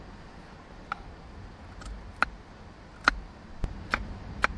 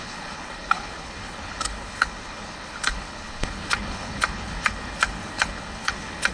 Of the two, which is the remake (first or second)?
second